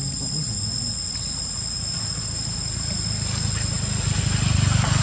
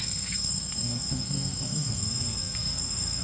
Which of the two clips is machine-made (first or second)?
second